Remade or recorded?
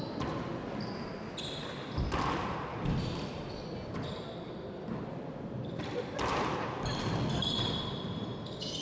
recorded